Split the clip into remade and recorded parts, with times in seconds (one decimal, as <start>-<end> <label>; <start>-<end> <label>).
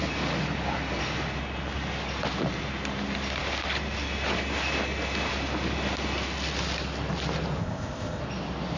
0.0-7.6 recorded; 7.6-8.2 remade; 8.2-8.8 recorded